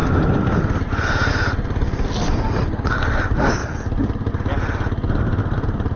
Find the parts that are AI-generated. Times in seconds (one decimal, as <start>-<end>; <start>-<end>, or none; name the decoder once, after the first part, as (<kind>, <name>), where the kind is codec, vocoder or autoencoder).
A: 5.4-6.0 (vocoder, BigVGAN v2)